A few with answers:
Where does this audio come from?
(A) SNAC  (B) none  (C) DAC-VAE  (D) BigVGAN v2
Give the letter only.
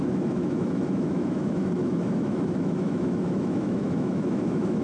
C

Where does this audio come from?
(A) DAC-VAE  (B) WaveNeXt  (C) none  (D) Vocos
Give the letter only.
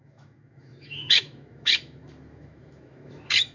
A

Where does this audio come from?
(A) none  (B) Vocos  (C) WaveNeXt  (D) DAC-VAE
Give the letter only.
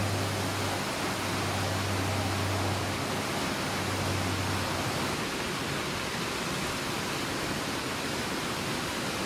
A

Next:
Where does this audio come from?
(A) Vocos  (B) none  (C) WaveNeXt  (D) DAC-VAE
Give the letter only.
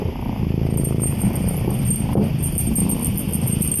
B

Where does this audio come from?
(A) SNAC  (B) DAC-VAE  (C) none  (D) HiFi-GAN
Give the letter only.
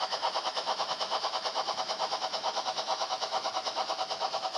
B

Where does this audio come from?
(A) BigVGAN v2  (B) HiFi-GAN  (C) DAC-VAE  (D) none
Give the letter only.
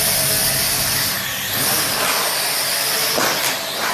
D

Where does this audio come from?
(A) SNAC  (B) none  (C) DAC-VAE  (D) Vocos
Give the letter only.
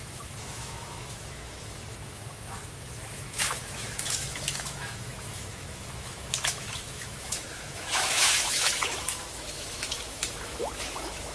C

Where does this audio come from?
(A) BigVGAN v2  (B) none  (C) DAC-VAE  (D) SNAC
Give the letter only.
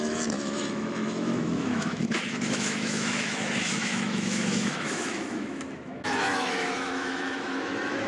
C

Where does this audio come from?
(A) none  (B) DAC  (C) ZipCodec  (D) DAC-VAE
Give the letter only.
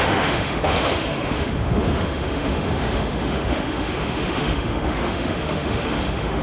D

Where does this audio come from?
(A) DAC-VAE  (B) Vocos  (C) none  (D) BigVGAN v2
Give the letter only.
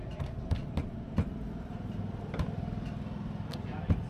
C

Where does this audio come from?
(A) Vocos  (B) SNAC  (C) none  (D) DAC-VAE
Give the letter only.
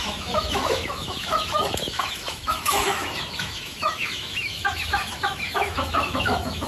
D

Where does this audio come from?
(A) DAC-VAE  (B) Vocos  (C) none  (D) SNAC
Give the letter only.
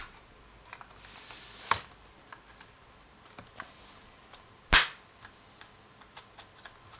C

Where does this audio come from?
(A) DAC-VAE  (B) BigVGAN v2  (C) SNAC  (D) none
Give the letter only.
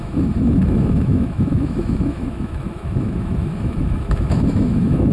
A